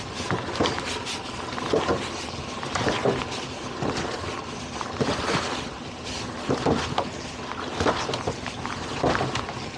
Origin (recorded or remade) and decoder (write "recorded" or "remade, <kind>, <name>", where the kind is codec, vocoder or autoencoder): recorded